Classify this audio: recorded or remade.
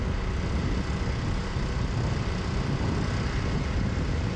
recorded